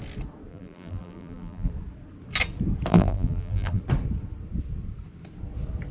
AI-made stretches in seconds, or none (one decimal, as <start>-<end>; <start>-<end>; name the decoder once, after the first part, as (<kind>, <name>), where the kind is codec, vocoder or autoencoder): 0.5-1.7 (vocoder, BigVGAN v2); 2.9-3.8